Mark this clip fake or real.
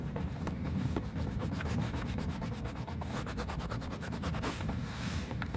fake